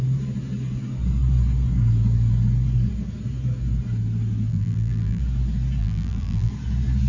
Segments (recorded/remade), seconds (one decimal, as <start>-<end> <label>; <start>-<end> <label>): 0.0-4.5 recorded; 4.5-5.2 remade; 5.2-5.8 recorded; 5.8-6.5 remade; 6.5-7.1 recorded